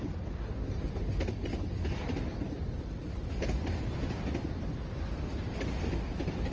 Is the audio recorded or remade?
recorded